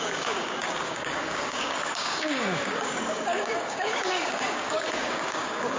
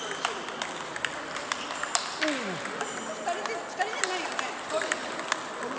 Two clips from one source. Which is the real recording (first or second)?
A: second